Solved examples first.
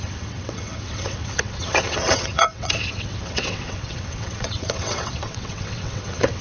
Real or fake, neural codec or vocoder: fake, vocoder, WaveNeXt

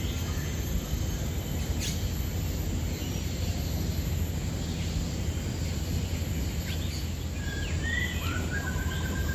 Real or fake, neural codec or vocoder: real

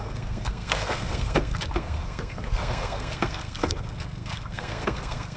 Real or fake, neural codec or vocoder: fake, codec, SNAC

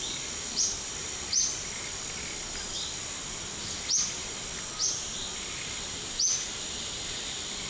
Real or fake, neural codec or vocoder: real